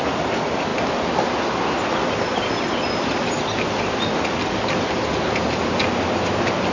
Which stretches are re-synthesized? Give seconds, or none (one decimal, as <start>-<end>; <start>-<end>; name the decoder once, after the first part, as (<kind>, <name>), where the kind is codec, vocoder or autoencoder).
none